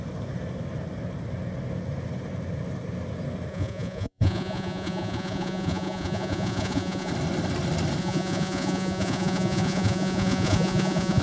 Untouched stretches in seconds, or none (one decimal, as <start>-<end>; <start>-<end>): 0.0-3.5; 7.1-8.0